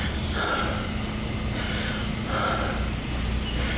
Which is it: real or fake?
real